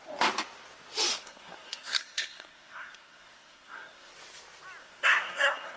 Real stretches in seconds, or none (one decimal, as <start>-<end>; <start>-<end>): 0.0-1.1; 4.1-4.8